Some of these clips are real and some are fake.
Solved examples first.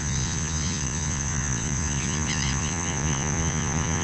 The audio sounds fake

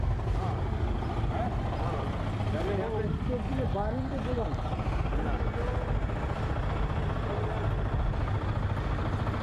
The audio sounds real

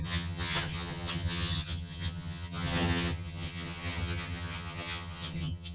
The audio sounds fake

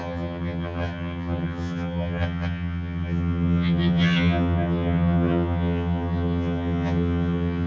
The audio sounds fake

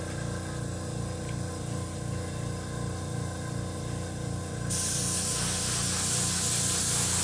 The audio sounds real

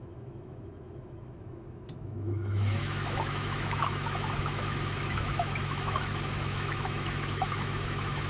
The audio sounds fake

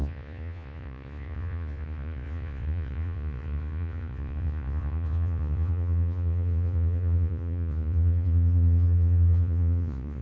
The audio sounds fake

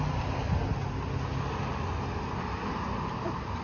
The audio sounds real